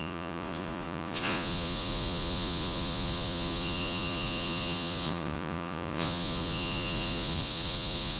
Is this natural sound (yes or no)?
no